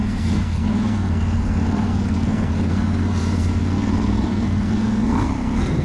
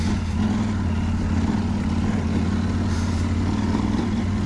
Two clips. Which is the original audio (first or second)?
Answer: second